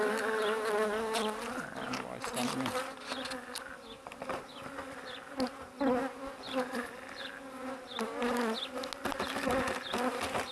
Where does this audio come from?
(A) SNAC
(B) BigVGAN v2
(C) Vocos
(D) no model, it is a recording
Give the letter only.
D